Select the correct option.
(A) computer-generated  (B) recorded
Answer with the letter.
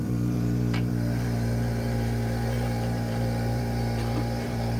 A